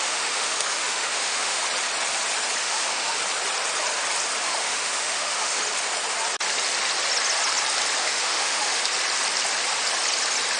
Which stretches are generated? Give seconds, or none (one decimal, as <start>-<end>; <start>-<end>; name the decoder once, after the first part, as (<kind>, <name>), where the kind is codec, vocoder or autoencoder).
0.0-1.6 (autoencoder, DAC-VAE); 2.6-3.2; 4.4-5.6; 8.0-8.8